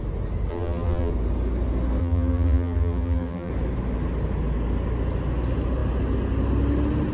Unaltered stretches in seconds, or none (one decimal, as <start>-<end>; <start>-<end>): 0.0-0.5; 1.1-2.0; 3.5-7.1